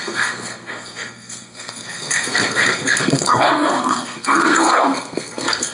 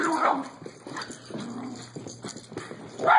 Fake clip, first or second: first